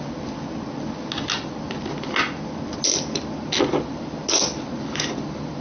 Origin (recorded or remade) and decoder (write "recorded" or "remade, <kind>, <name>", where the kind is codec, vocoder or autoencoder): recorded